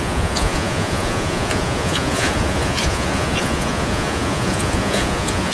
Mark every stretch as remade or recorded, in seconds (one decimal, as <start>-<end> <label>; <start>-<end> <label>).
0.0-5.5 remade